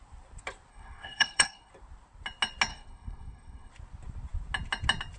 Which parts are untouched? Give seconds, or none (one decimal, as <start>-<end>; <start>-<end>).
0.0-0.7; 1.7-2.7; 3.7-5.2